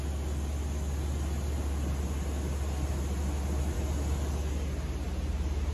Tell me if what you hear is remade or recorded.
recorded